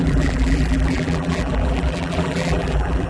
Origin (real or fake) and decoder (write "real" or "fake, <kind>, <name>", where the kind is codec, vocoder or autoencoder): fake, vocoder, BigVGAN v2